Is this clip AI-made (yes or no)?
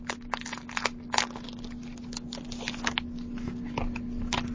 no